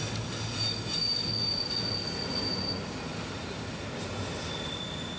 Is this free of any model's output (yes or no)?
yes